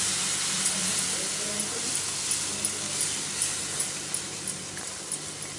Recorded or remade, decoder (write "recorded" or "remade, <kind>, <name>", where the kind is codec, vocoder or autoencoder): recorded